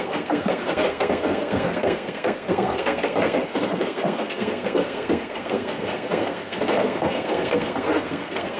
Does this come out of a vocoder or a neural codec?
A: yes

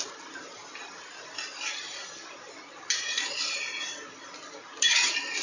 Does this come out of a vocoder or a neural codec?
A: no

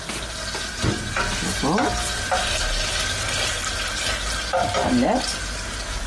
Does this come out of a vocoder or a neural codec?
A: no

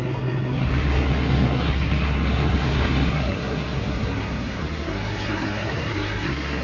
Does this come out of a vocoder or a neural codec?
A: yes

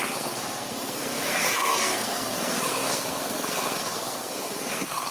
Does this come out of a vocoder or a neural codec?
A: yes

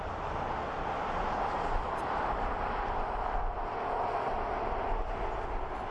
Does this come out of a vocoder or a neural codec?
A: no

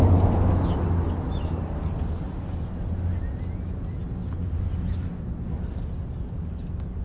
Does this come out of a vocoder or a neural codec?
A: no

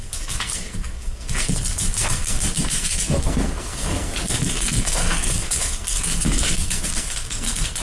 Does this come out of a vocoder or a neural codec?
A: yes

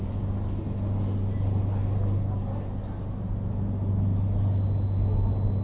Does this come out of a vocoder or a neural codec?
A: no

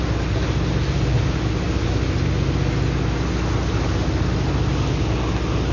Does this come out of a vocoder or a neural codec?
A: no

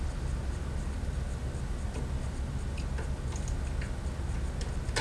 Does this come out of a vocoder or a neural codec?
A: no